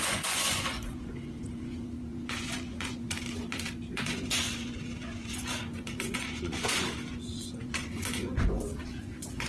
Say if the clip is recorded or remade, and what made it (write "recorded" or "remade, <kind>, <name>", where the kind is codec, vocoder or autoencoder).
remade, vocoder, Vocos